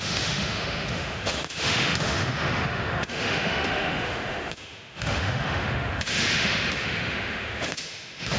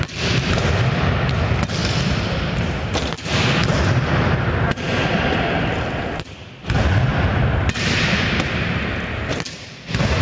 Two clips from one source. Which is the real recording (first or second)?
second